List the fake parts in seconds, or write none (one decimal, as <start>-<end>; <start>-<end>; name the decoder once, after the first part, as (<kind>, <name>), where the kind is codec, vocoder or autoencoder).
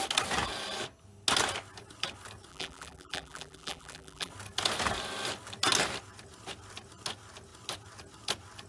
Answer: 2.5-4.3 (vocoder, BigVGAN v2)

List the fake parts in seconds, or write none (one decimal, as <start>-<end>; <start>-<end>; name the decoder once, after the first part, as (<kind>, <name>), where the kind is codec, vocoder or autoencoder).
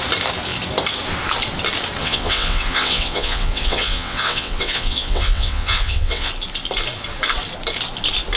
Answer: 2.0-6.3 (vocoder, WaveNeXt)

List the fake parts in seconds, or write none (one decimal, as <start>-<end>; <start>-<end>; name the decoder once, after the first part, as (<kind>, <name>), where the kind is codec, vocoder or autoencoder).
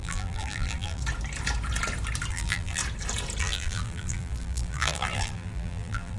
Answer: 0.0-1.0 (vocoder, BigVGAN v2); 2.3-2.8; 3.4-6.2